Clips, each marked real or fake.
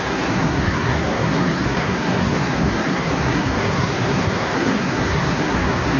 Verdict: fake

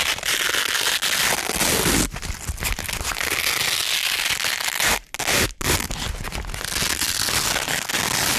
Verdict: real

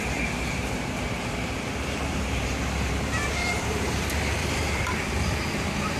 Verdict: fake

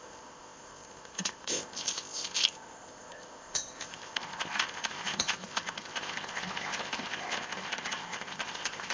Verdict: fake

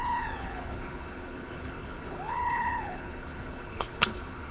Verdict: fake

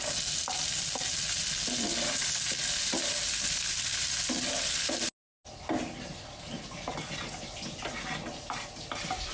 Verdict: real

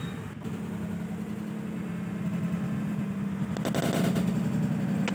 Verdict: real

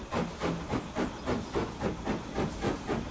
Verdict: real